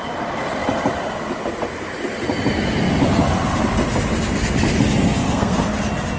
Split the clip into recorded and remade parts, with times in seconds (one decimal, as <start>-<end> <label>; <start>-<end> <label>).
0.0-5.1 recorded; 5.1-5.7 remade; 5.7-6.2 recorded